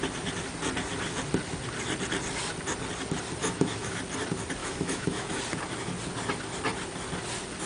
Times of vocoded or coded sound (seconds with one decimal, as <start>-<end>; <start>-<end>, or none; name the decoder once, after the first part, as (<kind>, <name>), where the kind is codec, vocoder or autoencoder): 3.4-4.0 (autoencoder, DAC-VAE); 4.6-5.4